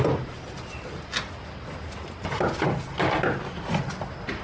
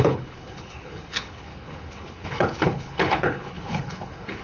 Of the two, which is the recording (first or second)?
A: first